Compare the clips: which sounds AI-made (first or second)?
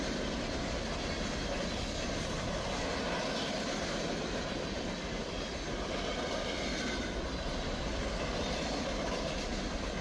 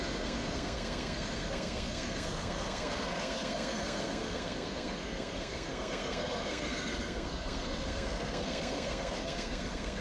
second